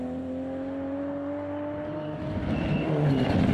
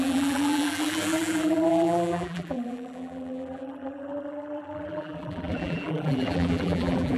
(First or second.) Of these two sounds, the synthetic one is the second